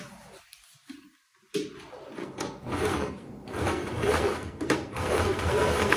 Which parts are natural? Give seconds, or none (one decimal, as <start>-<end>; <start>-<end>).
0.0-2.2